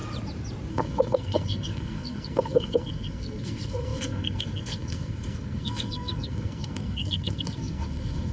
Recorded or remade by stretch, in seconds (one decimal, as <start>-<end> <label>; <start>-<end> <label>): 0.0-0.7 recorded; 0.7-8.3 remade